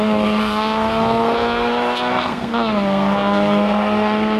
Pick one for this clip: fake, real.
fake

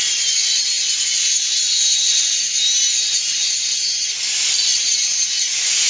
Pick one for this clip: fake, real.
real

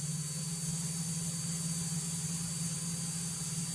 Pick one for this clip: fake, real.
real